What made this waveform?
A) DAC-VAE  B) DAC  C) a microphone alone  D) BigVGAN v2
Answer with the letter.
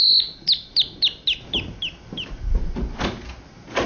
C